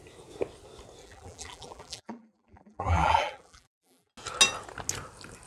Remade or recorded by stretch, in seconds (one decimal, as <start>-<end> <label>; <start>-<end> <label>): 0.0-1.0 recorded; 1.0-4.1 remade; 4.1-5.5 recorded